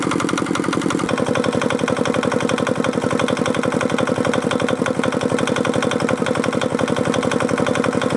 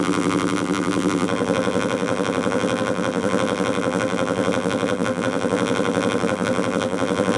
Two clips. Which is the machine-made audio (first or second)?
second